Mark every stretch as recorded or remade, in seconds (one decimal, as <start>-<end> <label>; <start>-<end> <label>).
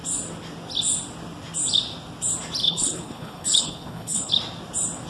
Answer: 0.0-2.6 recorded; 2.6-4.3 remade; 4.3-5.1 recorded